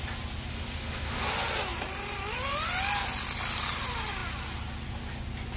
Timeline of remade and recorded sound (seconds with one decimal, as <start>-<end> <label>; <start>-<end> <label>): 0.0-0.5 recorded; 0.5-1.2 remade; 1.2-5.6 recorded